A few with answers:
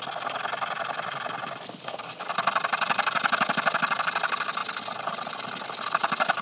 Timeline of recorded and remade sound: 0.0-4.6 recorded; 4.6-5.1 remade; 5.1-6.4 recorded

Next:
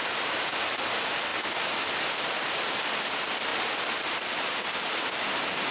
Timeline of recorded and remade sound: 0.0-1.3 remade; 1.3-2.5 recorded; 2.5-3.5 remade; 3.5-5.7 recorded

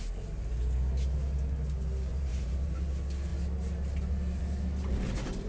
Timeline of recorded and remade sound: 0.0-2.1 recorded; 2.1-2.9 remade; 2.9-5.5 recorded

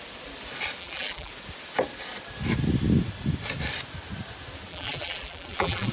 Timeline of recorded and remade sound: 0.0-0.8 recorded; 0.8-1.3 remade; 1.3-4.7 recorded; 4.7-5.9 remade

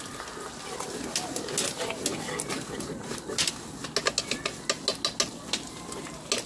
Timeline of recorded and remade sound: 0.0-6.5 recorded

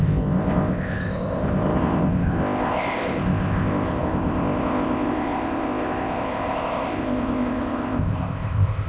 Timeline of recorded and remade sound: 0.0-8.9 remade

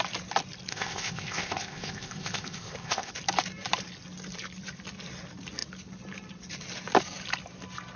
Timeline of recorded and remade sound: 0.0-0.7 recorded; 0.7-3.1 remade; 3.1-8.0 recorded